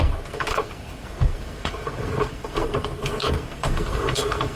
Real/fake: fake